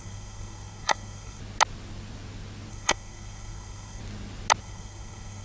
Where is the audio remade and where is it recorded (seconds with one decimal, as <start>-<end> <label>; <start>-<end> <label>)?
0.0-1.4 remade; 1.4-2.7 recorded; 2.7-4.0 remade; 4.0-4.6 recorded; 4.6-5.4 remade